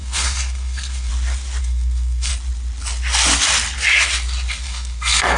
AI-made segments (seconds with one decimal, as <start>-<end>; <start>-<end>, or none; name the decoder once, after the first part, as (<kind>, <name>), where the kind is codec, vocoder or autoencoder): 0.0-1.1 (codec, SNAC); 1.6-2.3; 4.5-5.4